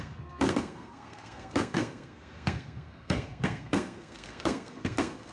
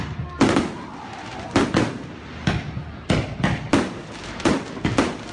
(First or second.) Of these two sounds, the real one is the second